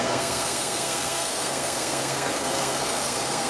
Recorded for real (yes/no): no